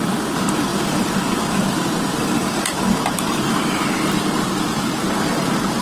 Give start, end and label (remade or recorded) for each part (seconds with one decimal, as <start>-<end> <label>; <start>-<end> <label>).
0.0-0.7 recorded; 0.7-4.2 remade; 4.2-5.8 recorded